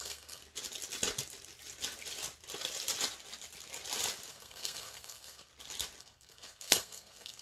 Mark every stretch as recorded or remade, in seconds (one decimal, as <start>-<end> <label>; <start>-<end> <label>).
0.0-0.4 remade; 0.4-4.3 recorded; 4.3-5.5 remade; 5.5-6.0 recorded; 6.0-7.4 remade